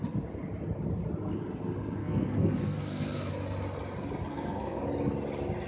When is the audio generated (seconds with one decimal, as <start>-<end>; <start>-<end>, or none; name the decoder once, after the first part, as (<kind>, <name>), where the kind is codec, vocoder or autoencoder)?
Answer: 2.0-3.3 (codec, SNAC); 4.3-4.8